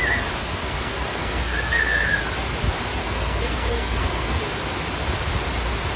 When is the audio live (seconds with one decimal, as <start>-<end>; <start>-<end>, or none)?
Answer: 0.0-0.4; 2.2-3.0; 4.4-6.0